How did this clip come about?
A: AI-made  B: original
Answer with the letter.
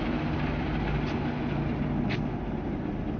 B